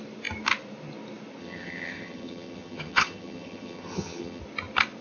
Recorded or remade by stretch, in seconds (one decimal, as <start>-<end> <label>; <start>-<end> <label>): 0.0-1.4 recorded; 1.4-4.4 remade; 4.4-5.0 recorded